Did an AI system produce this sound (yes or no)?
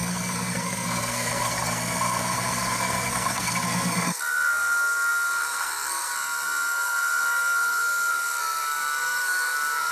yes